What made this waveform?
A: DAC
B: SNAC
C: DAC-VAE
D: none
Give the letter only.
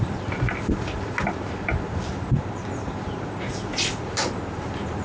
D